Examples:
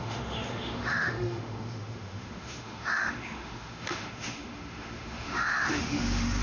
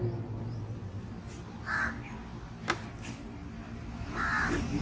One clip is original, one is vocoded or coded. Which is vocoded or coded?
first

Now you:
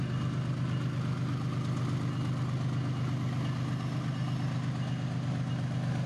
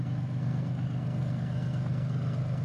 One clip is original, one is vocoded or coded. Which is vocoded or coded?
second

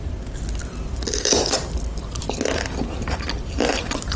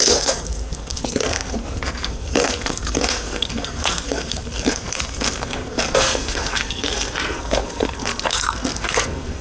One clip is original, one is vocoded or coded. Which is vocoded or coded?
second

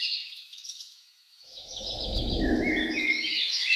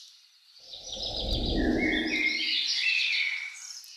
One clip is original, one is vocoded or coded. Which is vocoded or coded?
first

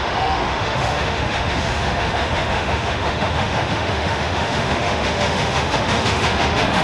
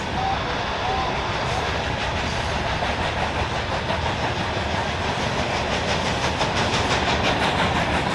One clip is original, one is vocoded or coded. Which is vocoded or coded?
first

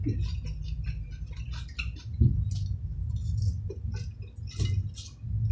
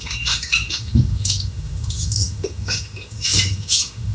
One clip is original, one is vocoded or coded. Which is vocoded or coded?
second